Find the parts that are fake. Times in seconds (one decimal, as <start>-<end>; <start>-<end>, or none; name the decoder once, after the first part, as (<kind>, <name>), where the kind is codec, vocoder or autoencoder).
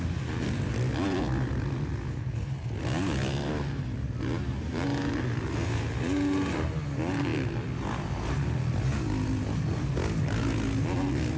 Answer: none